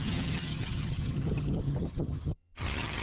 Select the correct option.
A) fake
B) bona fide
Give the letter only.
A